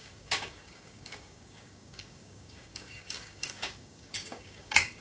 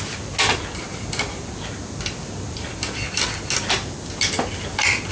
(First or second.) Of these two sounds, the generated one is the first